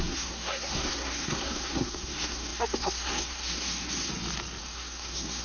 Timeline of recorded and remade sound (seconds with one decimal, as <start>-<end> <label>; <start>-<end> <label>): 0.0-4.1 remade; 4.1-4.6 recorded; 4.6-5.4 remade